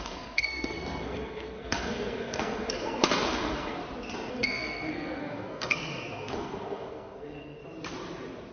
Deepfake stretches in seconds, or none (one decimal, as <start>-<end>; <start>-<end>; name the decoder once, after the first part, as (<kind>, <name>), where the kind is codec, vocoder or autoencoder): 0.0-3.8 (codec, SNAC); 4.3-7.6